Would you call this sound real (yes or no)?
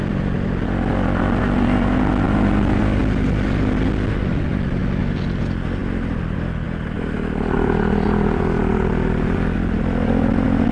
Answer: yes